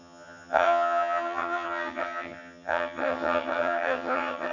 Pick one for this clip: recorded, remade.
remade